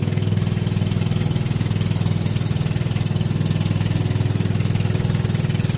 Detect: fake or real real